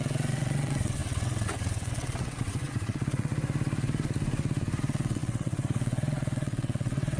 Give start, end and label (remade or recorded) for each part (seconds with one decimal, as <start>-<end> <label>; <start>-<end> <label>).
0.0-3.3 remade; 3.3-4.8 recorded; 4.8-7.2 remade